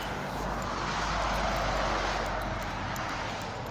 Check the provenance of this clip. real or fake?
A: real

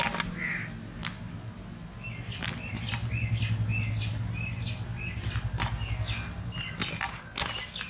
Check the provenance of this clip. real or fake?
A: real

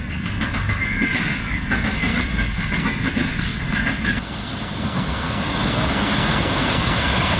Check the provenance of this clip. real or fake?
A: fake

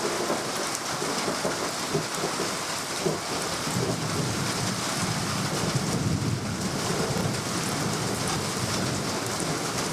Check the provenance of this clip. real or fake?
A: real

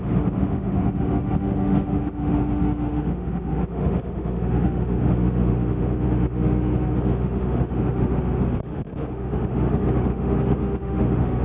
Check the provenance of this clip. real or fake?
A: fake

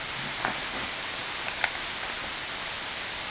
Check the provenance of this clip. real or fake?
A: real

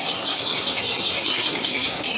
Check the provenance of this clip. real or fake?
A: fake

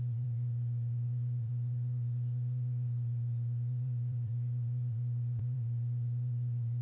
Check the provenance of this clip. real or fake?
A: fake